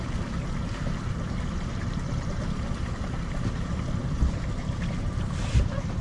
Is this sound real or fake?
fake